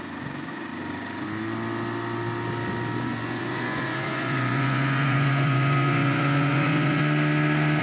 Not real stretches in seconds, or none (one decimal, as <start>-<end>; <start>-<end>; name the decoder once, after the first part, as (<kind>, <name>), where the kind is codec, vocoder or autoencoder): 0.0-0.7 (vocoder, Vocos); 3.0-7.0